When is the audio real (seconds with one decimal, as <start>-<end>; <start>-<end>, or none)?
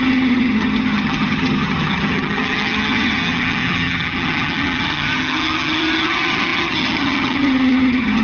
none